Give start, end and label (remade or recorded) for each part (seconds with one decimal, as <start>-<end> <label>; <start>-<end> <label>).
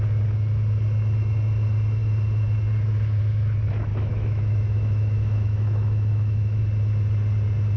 0.0-3.9 recorded; 3.9-6.6 remade; 6.6-7.8 recorded